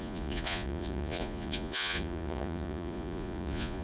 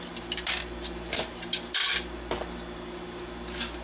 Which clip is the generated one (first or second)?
first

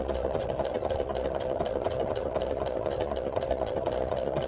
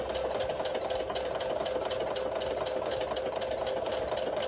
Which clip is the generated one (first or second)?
first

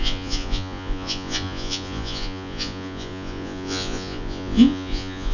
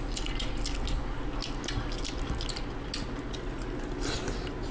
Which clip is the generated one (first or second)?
first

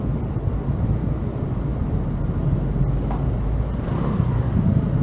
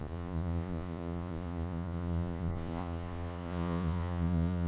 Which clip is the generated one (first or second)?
second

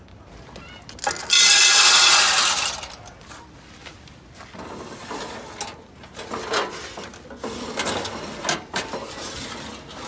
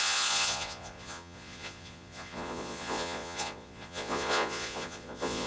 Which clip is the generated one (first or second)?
second